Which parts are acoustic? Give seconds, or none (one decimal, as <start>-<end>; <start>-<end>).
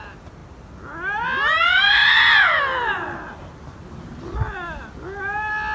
0.0-5.7